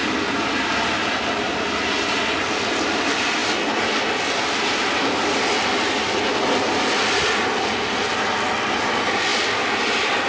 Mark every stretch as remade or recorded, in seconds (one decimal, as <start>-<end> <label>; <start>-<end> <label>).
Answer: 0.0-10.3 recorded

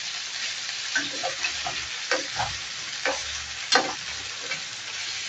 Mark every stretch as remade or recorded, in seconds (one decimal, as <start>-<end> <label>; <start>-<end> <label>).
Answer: 0.0-1.2 remade; 1.2-2.0 recorded; 2.0-3.2 remade; 3.2-3.8 recorded; 3.8-5.3 remade

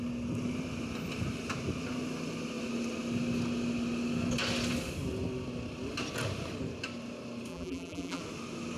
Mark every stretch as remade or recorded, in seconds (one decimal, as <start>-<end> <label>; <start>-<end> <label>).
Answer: 0.0-7.5 recorded; 7.5-8.2 remade; 8.2-8.8 recorded

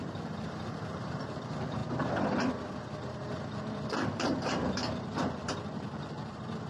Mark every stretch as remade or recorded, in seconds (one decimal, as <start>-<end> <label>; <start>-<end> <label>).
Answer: 0.0-1.8 remade; 1.8-3.1 recorded; 3.1-6.7 remade

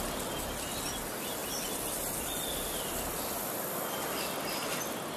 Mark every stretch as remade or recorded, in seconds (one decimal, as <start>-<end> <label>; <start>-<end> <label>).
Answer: 0.0-5.2 recorded

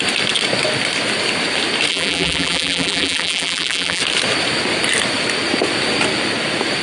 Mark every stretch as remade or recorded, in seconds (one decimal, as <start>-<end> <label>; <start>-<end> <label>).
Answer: 0.0-1.9 recorded; 1.9-4.0 remade; 4.0-6.8 recorded

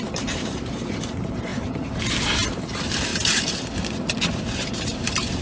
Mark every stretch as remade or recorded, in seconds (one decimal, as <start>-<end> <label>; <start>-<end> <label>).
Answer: 0.0-3.1 remade; 3.1-4.4 recorded; 4.4-5.4 remade

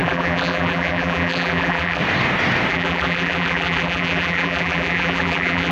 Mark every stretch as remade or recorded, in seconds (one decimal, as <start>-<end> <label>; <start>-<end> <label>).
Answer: 0.0-2.0 remade; 2.0-2.7 recorded; 2.7-5.7 remade